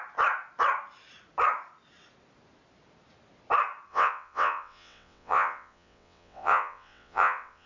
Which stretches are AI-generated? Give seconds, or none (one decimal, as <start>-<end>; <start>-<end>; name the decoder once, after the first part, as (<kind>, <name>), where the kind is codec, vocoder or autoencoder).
3.9-7.7 (vocoder, WaveNeXt)